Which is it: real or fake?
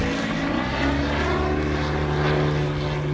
real